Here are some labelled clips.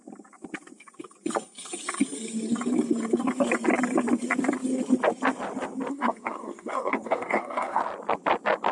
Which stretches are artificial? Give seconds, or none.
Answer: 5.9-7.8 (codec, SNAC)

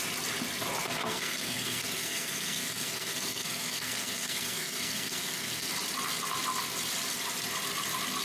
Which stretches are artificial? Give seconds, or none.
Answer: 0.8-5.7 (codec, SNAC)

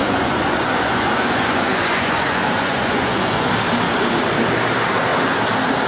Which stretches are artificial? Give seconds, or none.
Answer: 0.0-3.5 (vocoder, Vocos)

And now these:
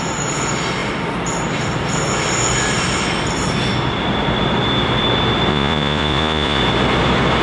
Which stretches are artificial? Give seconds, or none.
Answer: 5.5-6.6 (vocoder, Vocos)

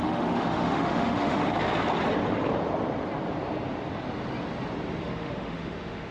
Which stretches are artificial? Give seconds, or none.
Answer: 0.0-1.4 (autoencoder, DAC-VAE); 5.0-6.1

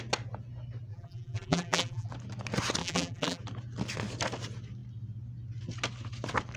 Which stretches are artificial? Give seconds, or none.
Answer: 0.9-2.1 (vocoder, BigVGAN v2); 2.8-3.4

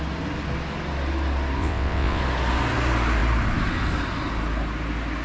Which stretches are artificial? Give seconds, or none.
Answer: 1.6-2.2 (vocoder, WaveNeXt)